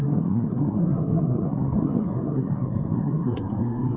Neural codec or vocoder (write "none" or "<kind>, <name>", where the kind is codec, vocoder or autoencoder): codec, SNAC